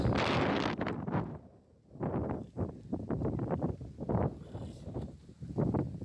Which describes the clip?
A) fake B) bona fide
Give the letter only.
B